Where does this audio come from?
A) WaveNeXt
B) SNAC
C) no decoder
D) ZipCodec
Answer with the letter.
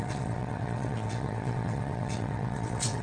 A